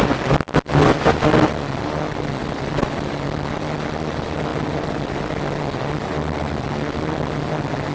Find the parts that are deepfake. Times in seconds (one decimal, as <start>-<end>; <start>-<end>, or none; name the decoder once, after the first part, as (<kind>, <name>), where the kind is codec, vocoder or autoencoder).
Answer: none